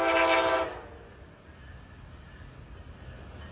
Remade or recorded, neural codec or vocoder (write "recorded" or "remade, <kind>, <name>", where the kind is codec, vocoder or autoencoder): recorded